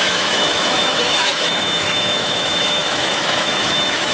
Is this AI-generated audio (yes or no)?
yes